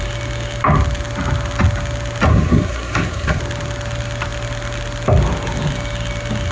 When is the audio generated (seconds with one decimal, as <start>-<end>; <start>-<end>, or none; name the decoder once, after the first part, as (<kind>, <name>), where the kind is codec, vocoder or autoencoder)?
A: 2.3-3.4 (codec, SNAC)